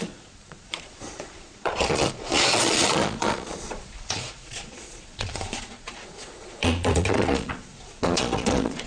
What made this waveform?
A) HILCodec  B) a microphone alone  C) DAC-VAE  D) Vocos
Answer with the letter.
D